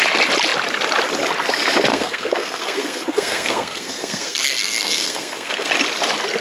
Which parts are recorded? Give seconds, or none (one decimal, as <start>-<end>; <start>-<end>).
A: 0.0-1.9; 5.7-6.4